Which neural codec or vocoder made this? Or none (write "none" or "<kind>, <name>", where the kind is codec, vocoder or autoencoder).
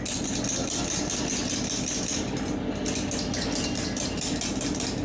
none